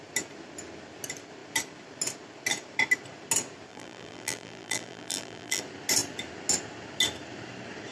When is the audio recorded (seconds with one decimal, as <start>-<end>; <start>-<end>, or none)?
0.0-3.7; 5.6-7.9